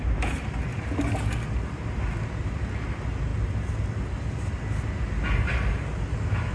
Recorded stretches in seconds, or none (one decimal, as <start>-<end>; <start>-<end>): 0.0-6.5